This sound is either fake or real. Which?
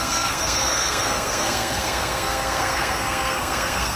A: fake